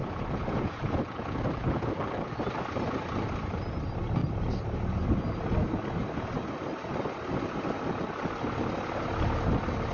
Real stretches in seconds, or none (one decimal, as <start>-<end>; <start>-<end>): 1.9-9.9